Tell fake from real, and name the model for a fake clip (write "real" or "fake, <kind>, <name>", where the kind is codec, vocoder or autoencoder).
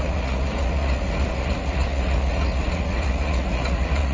fake, vocoder, Vocos